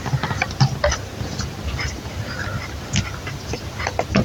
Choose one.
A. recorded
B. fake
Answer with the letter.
A